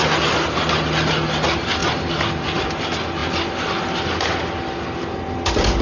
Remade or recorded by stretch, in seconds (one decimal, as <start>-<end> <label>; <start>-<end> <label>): 0.0-5.8 recorded